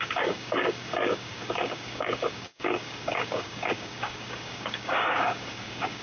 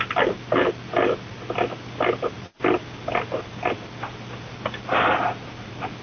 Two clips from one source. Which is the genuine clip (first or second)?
second